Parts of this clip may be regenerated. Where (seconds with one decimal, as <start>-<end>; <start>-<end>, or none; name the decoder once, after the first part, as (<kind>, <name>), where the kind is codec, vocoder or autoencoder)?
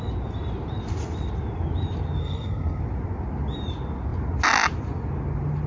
2.2-2.8 (codec, SNAC)